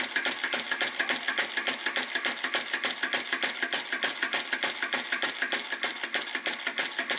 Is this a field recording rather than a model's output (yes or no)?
yes